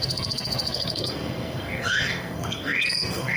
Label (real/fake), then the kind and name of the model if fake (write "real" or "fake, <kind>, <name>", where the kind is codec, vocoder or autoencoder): fake, codec, SNAC